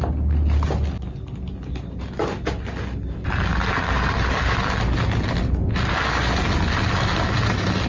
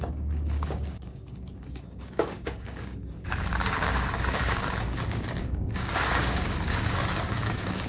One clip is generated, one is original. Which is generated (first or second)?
second